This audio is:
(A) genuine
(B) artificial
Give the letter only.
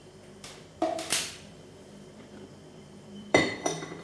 B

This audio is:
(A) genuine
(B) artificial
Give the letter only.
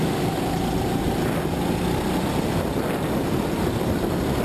A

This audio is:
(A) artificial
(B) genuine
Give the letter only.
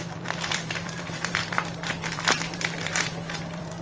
A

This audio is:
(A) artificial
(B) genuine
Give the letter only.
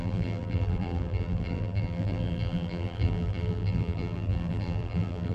A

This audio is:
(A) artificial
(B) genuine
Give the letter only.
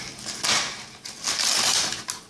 B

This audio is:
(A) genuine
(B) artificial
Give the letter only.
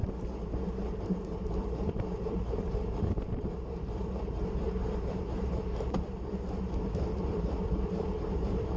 B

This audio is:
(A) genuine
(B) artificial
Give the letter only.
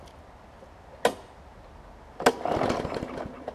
A